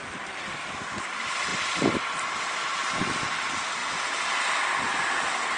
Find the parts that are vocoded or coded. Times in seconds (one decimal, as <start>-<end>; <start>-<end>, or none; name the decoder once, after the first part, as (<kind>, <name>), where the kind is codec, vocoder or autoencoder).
none